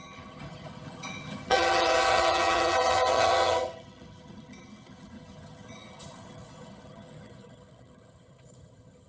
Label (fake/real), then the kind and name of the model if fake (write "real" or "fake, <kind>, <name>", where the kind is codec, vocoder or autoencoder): fake, vocoder, HiFi-GAN